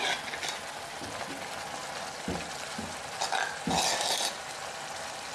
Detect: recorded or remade recorded